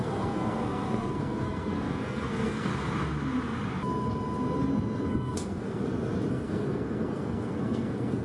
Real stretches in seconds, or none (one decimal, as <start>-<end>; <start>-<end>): 2.7-5.1; 5.8-6.3